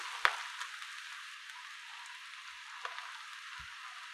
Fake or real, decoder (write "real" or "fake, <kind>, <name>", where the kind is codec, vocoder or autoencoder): real